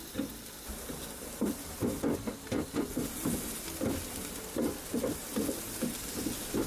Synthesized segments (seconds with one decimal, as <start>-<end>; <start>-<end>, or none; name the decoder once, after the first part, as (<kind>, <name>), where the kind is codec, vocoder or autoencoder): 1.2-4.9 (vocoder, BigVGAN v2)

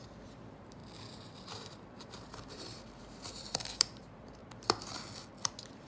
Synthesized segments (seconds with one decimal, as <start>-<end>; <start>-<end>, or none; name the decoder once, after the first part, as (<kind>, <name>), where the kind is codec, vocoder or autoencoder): 0.0-0.8 (vocoder, BigVGAN v2); 1.9-4.4; 5.5-5.9

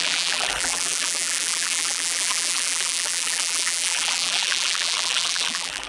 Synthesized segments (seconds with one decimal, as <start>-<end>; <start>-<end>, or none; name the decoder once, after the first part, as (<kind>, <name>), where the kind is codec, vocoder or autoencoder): 0.0-5.9 (vocoder, BigVGAN v2)

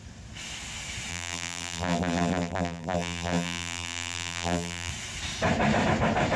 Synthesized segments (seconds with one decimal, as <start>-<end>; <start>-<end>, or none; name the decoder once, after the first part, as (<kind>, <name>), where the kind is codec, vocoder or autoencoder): 1.1-4.9 (vocoder, BigVGAN v2)